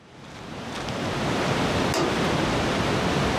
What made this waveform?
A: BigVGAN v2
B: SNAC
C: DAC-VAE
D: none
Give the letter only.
D